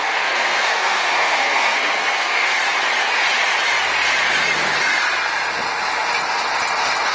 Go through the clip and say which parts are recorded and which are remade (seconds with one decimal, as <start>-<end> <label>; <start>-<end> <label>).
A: 0.0-2.6 remade; 2.6-7.1 recorded